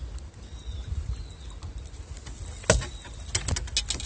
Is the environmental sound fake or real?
real